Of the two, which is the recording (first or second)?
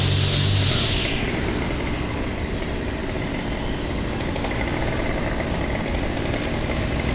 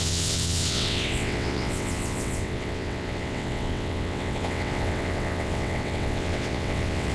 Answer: first